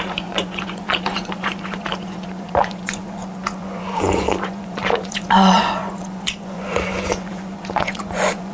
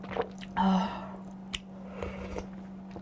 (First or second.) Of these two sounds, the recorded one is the second